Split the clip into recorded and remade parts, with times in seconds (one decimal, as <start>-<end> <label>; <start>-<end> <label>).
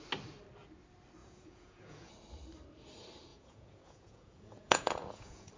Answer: 0.0-1.2 recorded; 1.2-2.1 remade; 2.1-3.3 recorded; 3.3-5.6 remade